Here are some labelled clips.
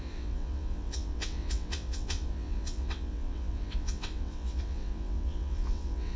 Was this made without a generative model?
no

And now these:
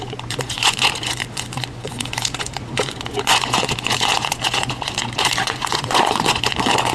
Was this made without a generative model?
no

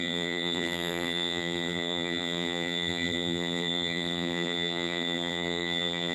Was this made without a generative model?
no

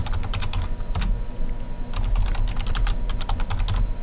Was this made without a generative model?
yes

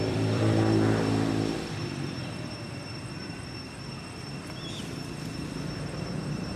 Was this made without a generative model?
no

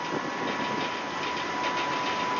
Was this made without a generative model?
yes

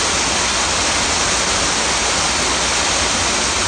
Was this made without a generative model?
yes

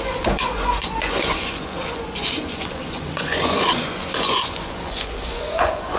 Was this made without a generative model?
no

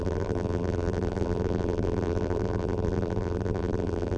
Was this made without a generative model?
no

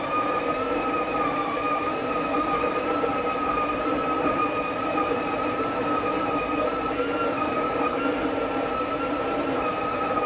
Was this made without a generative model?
no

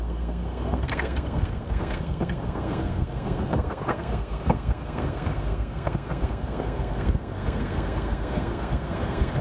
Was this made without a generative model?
no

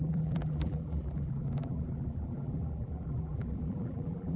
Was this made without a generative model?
no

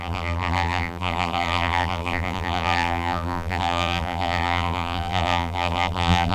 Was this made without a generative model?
no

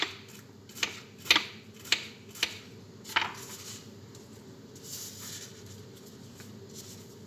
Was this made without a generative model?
yes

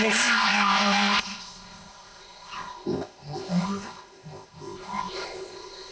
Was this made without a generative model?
no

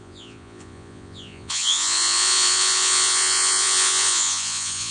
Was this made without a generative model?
no